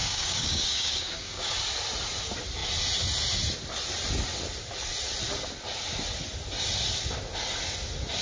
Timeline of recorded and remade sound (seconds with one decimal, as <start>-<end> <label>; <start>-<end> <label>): 0.0-1.6 remade; 1.6-8.2 recorded